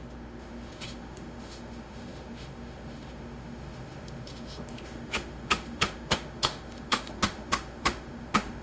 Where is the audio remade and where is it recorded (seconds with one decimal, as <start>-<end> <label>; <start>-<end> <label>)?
0.0-8.6 remade